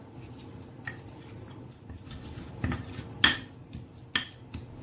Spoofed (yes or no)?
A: no